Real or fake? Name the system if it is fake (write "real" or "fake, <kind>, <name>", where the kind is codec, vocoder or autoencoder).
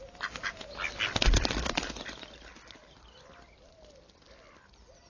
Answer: real